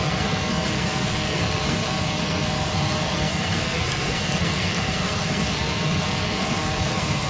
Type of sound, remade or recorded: remade